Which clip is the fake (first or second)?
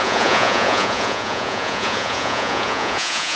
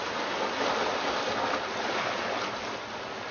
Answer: first